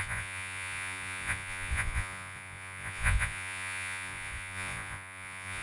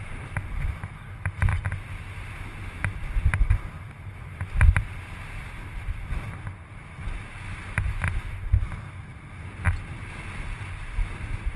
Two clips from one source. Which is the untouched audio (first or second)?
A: second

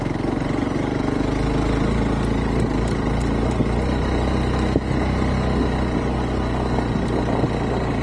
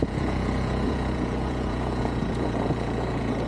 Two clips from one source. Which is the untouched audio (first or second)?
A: first